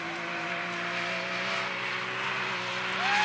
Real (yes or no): yes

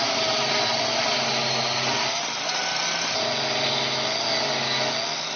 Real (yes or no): yes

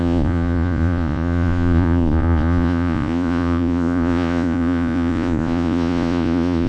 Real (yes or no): no